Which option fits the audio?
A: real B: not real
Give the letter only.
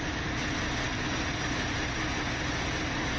A